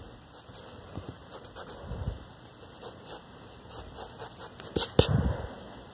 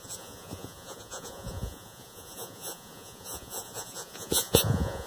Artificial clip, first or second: second